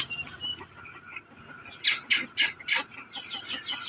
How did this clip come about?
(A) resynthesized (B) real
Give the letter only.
B